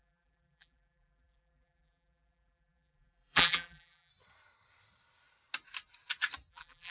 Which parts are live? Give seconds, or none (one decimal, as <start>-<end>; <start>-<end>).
4.1-6.5